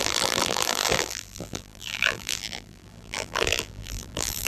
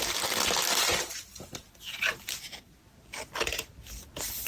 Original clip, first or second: second